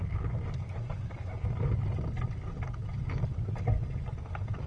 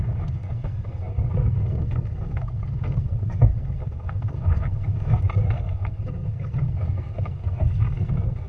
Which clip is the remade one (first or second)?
second